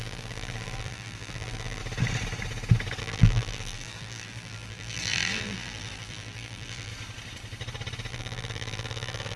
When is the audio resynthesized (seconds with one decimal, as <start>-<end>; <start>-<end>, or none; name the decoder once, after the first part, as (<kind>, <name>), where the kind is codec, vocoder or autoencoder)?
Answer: 0.0-1.8 (vocoder, BigVGAN v2); 3.0-6.9; 8.1-9.4